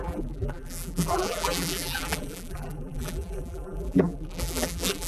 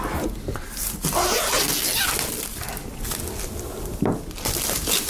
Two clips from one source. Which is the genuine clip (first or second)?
second